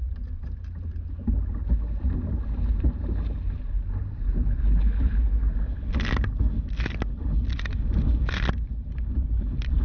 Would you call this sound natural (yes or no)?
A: yes